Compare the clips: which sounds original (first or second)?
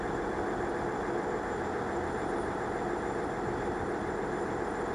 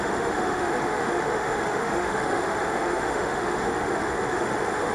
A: first